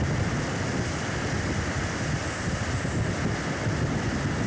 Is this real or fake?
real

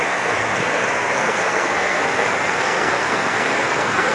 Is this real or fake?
fake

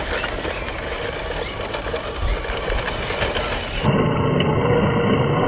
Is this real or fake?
real